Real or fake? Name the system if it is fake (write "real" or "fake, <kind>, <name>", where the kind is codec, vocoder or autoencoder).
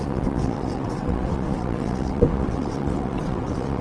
fake, vocoder, WaveNeXt